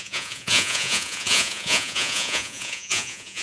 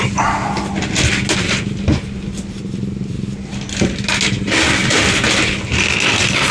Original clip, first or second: second